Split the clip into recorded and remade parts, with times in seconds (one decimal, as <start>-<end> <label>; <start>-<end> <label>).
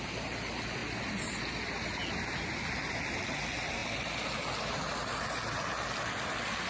0.0-6.7 recorded